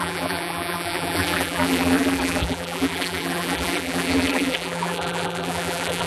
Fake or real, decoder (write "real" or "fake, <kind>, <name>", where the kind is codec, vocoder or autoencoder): fake, vocoder, BigVGAN v2